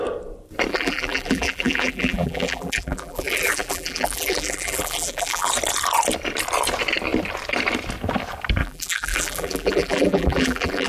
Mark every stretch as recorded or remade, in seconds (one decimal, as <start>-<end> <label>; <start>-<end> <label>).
0.0-0.7 recorded; 0.7-5.5 remade; 5.5-8.6 recorded; 8.6-10.9 remade